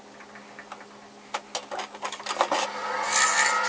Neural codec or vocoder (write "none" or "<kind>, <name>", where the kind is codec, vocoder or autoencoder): none